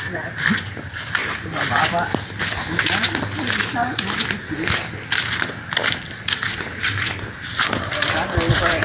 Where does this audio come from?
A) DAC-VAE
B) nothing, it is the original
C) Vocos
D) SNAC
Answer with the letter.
B